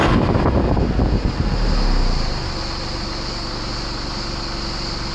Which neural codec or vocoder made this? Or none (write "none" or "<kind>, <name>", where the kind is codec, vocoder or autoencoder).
none